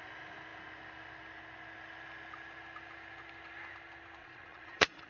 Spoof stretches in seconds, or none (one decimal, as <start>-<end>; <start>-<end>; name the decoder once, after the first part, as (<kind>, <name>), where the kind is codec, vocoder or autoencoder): 4.2-5.1 (vocoder, Vocos)